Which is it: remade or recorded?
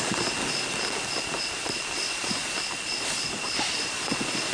recorded